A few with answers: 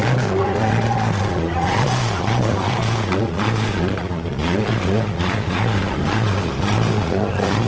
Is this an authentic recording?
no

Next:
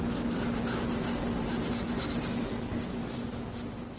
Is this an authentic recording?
yes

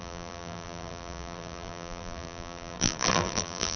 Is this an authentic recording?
no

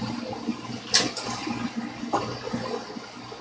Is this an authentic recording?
yes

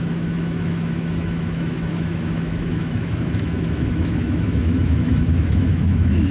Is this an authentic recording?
no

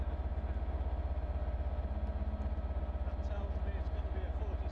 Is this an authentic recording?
yes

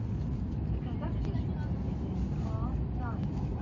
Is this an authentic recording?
yes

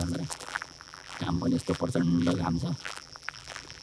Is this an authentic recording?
no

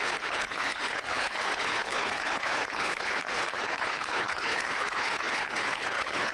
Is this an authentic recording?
no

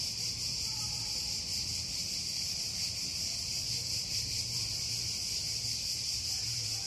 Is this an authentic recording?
no